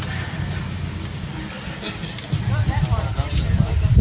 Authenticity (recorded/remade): recorded